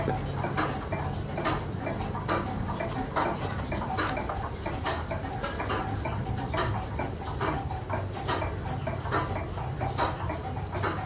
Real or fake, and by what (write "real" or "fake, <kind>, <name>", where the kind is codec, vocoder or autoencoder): real